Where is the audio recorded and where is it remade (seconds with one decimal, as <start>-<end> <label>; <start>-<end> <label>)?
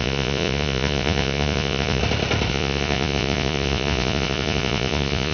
0.0-2.0 remade; 2.0-2.5 recorded; 2.5-5.3 remade